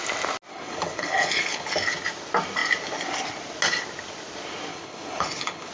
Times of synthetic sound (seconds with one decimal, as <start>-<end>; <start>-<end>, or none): 0.5-1.7; 4.7-5.7